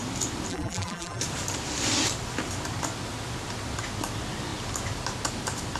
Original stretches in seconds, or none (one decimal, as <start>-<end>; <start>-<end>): 0.0-0.5; 1.2-5.8